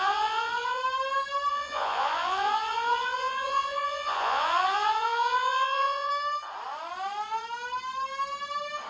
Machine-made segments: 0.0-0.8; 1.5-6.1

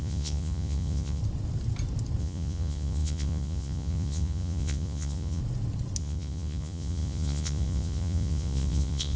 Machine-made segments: 0.0-1.2; 2.2-5.4; 6.0-9.2

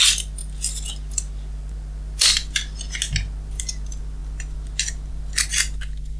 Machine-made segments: none

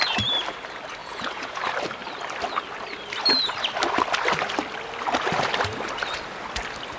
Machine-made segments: 1.0-1.6